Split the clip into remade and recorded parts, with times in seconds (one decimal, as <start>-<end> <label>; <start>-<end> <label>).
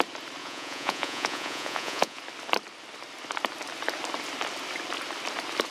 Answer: 0.0-0.4 recorded; 0.4-2.2 remade; 2.2-5.7 recorded